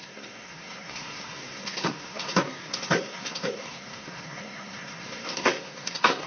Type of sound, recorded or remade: remade